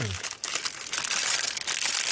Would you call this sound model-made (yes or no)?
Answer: no